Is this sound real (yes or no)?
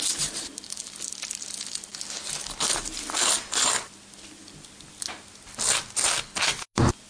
yes